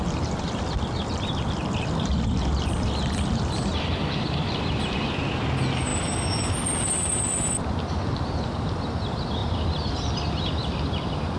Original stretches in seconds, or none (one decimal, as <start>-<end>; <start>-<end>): 0.0-11.4